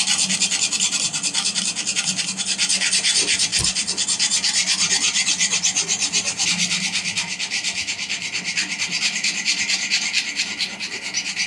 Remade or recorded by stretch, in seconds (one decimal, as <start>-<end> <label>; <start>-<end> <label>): 0.0-11.5 recorded